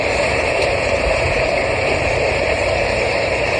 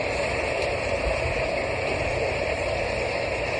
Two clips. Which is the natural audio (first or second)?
second